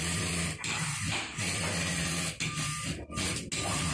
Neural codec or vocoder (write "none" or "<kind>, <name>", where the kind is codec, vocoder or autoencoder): none